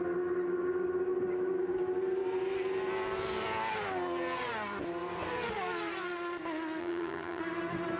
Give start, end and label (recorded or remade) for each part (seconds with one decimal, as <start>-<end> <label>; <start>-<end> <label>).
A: 0.0-6.8 recorded; 6.8-7.4 remade; 7.4-8.0 recorded